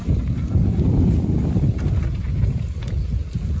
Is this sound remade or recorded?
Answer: recorded